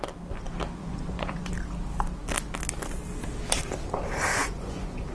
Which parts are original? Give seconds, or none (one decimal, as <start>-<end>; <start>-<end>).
0.0-0.8; 1.5-4.3